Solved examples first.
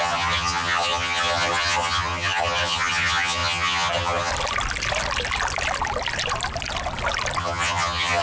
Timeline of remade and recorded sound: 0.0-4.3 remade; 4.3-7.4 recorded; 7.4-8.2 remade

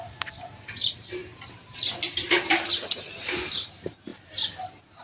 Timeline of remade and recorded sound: 0.0-1.2 recorded; 1.2-2.7 remade; 2.7-5.0 recorded

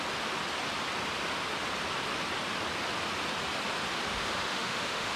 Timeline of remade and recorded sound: 0.0-4.1 recorded; 4.1-5.2 remade

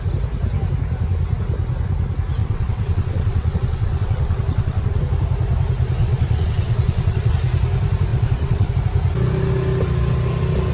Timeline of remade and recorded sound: 0.0-2.4 recorded; 2.4-5.0 remade; 5.0-6.0 recorded; 6.0-7.3 remade; 7.3-8.1 recorded; 8.1-8.7 remade; 8.7-10.7 recorded

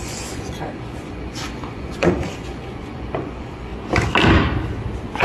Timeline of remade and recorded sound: 0.0-3.7 remade; 3.7-5.2 recorded

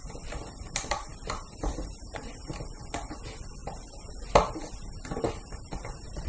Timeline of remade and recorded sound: 0.0-6.3 remade